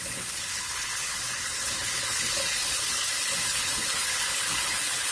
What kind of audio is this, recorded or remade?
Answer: remade